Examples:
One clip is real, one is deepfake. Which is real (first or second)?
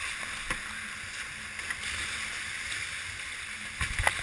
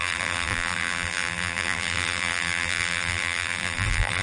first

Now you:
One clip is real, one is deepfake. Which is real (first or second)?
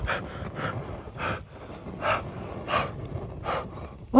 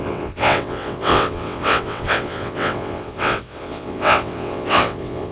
first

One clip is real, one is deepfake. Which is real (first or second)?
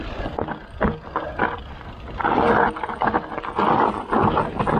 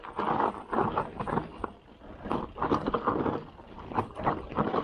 first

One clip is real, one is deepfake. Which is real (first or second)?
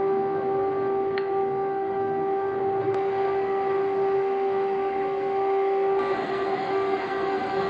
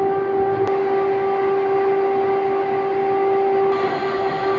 second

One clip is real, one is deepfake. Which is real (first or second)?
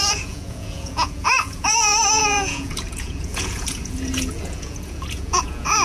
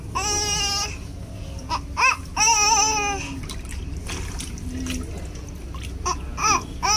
second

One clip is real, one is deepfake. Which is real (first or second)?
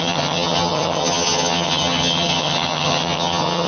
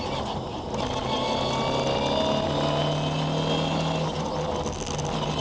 second